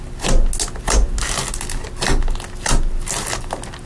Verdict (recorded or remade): recorded